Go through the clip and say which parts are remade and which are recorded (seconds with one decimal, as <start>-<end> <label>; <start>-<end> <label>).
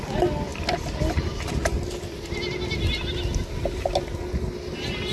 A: 0.0-5.1 recorded